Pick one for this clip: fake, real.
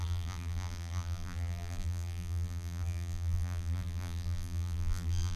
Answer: fake